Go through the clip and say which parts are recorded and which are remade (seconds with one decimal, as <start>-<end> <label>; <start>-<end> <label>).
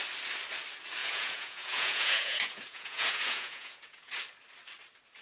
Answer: 0.0-1.0 recorded; 1.0-4.1 remade; 4.1-5.2 recorded